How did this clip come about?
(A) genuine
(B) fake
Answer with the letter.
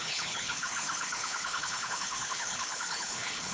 B